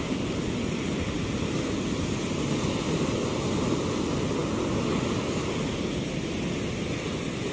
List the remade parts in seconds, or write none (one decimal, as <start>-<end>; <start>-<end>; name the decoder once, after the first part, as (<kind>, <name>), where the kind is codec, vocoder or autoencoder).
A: none